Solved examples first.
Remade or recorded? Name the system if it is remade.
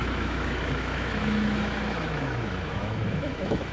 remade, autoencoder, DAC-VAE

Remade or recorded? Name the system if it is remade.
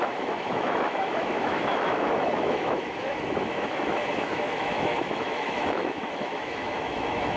remade, autoencoder, DAC-VAE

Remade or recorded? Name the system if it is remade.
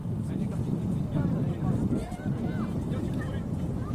recorded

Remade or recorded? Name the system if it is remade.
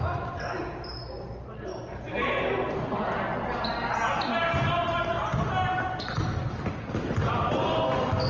recorded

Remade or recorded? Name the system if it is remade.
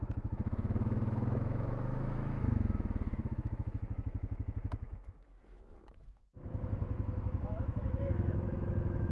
remade, autoencoder, DAC-VAE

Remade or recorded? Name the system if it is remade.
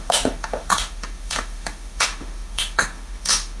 remade, autoencoder, DAC-VAE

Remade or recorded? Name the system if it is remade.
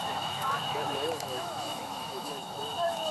remade, autoencoder, DAC-VAE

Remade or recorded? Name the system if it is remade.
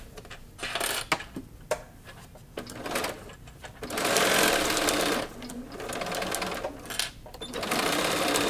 recorded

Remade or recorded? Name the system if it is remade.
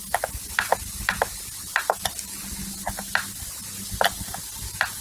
recorded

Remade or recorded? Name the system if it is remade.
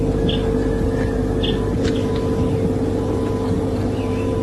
recorded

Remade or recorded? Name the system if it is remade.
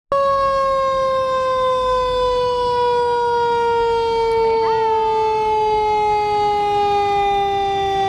recorded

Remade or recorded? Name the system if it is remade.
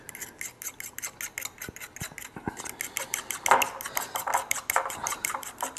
recorded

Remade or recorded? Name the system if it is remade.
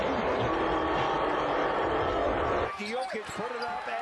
recorded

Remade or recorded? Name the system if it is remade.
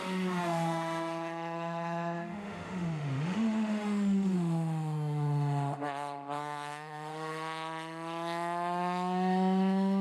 remade, autoencoder, DAC-VAE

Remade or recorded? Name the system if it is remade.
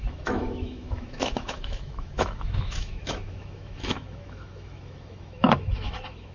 remade, autoencoder, DAC-VAE